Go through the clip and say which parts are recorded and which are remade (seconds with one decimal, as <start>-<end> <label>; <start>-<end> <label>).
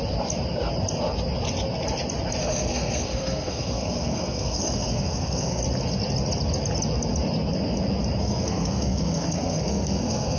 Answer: 0.0-2.4 recorded; 2.4-5.6 remade; 5.6-8.2 recorded; 8.2-10.4 remade